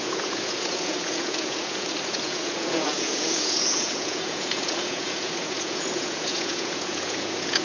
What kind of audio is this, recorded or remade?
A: remade